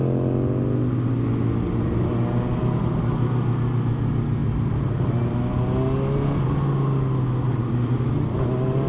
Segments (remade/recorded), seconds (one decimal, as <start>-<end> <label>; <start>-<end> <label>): 0.0-8.9 recorded

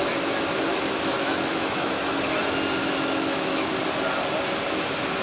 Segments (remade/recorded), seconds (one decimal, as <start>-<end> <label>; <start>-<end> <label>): 0.0-0.7 recorded; 0.7-1.9 remade; 1.9-2.8 recorded; 2.8-3.7 remade; 3.7-5.2 recorded

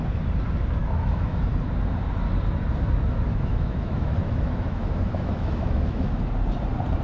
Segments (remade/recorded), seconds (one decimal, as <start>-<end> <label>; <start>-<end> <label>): 0.0-0.8 recorded; 0.8-1.4 remade; 1.4-3.3 recorded; 3.3-6.2 remade; 6.2-7.0 recorded